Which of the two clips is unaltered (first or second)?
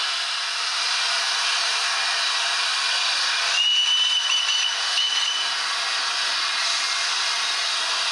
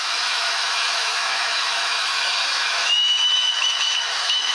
first